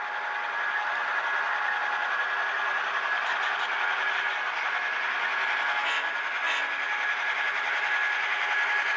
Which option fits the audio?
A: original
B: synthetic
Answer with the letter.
A